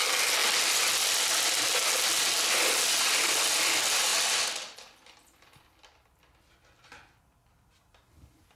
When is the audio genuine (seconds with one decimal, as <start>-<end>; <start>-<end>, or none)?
0.0-8.6